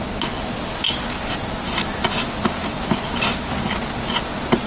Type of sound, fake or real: real